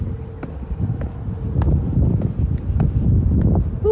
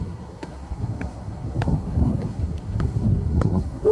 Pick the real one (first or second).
first